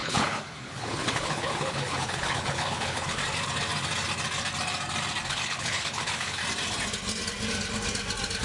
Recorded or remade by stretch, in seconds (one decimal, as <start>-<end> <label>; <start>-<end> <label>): 0.0-3.2 remade; 3.2-5.3 recorded; 5.3-6.4 remade; 6.4-8.4 recorded